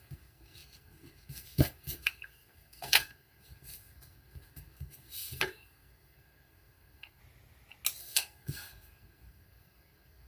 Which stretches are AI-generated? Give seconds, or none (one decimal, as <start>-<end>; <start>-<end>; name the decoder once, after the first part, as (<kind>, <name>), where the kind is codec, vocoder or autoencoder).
0.0-7.2 (codec, SNAC); 8.0-10.3